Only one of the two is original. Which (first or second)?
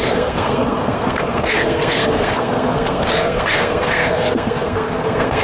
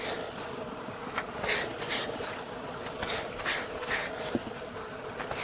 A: second